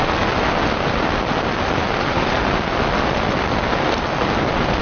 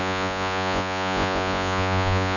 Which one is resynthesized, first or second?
second